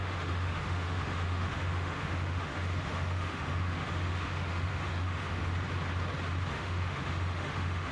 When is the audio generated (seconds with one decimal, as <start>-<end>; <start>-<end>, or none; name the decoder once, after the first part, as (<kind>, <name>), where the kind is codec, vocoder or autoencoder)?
0.0-5.4 (autoencoder, DAC-VAE); 6.5-7.9